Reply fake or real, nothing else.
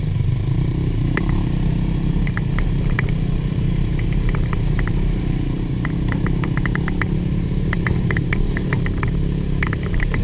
fake